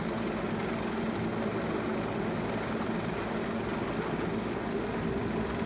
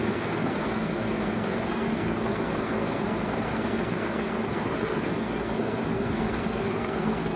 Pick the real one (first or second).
first